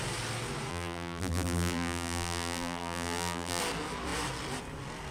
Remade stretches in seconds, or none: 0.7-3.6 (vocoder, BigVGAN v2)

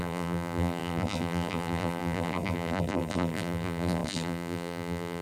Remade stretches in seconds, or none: 0.0-5.2 (vocoder, BigVGAN v2)

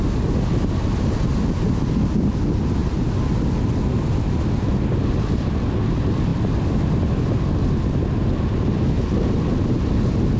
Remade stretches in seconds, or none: none

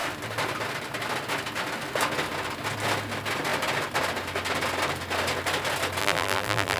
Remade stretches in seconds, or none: 6.0-6.8 (vocoder, BigVGAN v2)

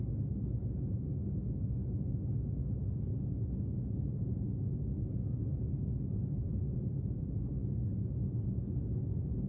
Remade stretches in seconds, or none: 5.5-7.5 (vocoder, BigVGAN v2)

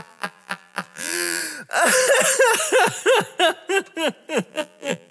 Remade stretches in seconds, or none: 0.0-1.4 (vocoder, BigVGAN v2); 4.5-5.1

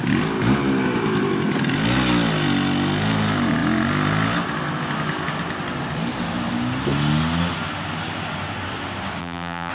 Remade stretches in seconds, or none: 9.2-9.7 (vocoder, BigVGAN v2)